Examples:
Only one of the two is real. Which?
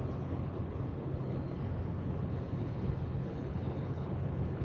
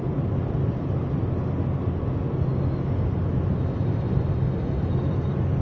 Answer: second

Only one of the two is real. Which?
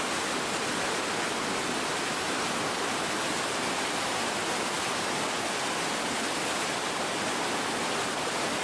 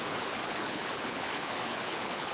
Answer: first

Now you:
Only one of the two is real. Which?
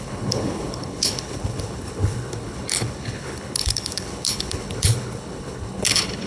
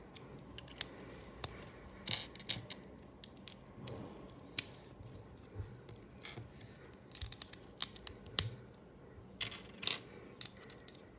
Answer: second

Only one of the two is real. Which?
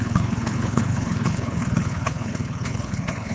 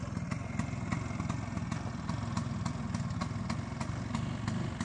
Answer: second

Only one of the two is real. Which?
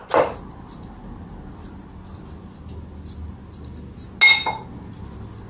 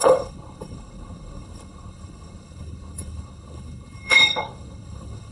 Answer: first